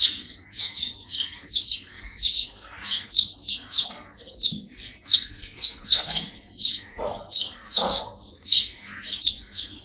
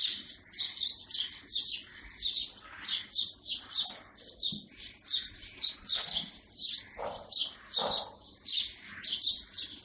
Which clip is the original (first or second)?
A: second